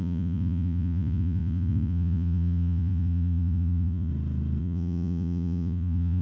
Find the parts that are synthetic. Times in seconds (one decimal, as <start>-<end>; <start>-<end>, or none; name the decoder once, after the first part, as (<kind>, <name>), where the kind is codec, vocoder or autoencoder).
0.0-4.1 (vocoder, Vocos); 4.6-6.2